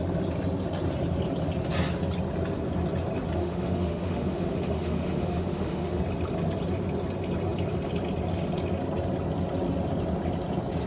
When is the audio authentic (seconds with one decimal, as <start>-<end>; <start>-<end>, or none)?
0.0-3.4; 6.0-10.9